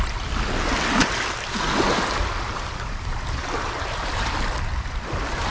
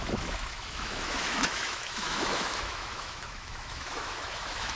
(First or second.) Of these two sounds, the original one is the first